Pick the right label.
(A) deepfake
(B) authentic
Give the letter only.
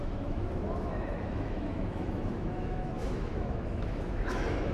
A